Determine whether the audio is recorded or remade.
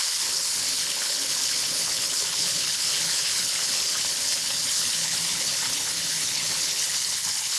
remade